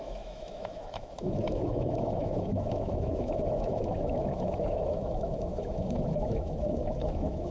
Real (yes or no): no